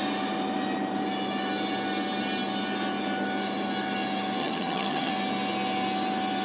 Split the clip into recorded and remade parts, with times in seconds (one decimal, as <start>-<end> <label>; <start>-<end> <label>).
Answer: 0.0-4.4 recorded; 4.4-5.1 remade; 5.1-6.4 recorded